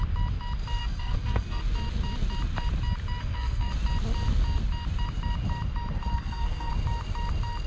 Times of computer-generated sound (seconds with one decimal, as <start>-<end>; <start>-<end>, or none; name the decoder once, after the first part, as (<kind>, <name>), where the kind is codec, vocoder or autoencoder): 0.8-1.6 (codec, SNAC); 3.2-3.7; 6.1-6.7